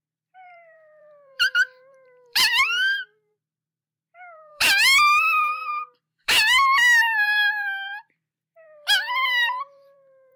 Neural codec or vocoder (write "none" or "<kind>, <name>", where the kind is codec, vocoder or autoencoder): vocoder, BigVGAN v2